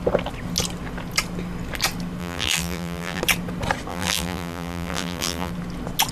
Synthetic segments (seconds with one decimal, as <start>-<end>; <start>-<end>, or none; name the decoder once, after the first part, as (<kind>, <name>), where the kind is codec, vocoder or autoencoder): 2.2-3.2 (vocoder, BigVGAN v2); 3.9-5.5